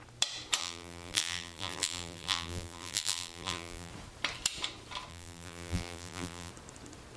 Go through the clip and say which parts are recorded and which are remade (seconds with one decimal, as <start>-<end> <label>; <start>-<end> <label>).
0.0-0.6 recorded; 0.6-3.9 remade; 3.9-5.1 recorded; 5.1-6.5 remade; 6.5-7.2 recorded